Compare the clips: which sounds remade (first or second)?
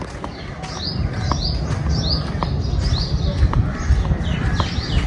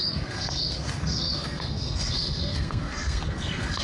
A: second